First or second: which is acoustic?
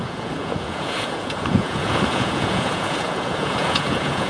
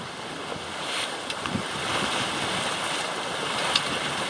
second